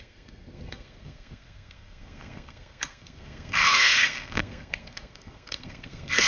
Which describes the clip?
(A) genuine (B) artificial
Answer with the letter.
B